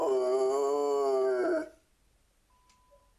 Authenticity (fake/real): real